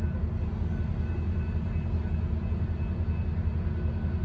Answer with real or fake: real